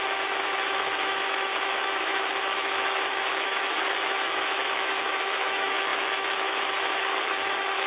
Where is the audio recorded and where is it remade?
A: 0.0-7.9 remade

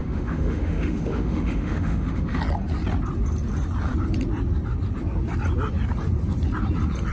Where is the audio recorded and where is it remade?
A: 0.0-2.4 remade; 2.4-7.1 recorded

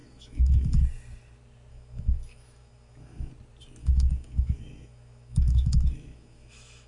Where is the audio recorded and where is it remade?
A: 0.0-0.8 remade; 0.8-1.7 recorded; 1.7-3.3 remade; 3.3-3.8 recorded; 3.8-6.9 remade

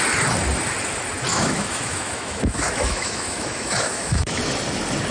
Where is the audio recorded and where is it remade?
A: 0.0-1.3 recorded; 1.3-4.4 remade; 4.4-5.1 recorded

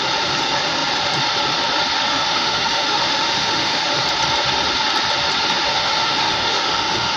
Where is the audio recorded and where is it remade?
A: 0.0-2.1 recorded; 2.1-3.9 remade; 3.9-5.7 recorded; 5.7-7.2 remade